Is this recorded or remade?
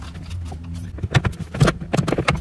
recorded